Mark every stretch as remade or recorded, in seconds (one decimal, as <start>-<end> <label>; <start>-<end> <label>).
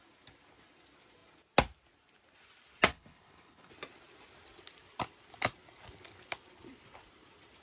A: 0.0-2.9 recorded; 2.9-3.7 remade; 3.7-7.6 recorded